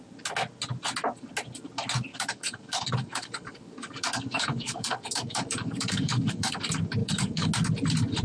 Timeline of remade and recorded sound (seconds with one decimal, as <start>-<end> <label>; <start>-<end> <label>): 0.0-2.1 recorded; 2.1-6.6 remade; 6.6-7.0 recorded; 7.0-7.5 remade; 7.5-8.2 recorded

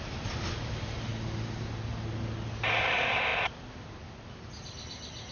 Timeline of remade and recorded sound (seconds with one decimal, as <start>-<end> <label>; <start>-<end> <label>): 0.0-5.3 recorded

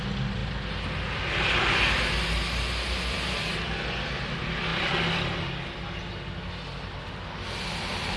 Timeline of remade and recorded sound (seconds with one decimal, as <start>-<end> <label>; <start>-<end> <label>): 0.0-8.2 recorded

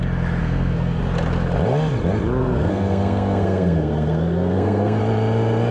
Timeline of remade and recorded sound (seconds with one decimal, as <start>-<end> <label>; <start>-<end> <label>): 0.0-0.4 recorded; 0.4-1.0 remade; 1.0-2.4 recorded; 2.4-5.0 remade; 5.0-5.7 recorded